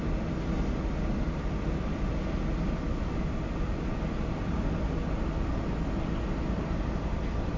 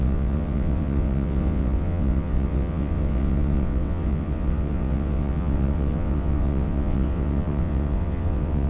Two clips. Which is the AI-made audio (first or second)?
second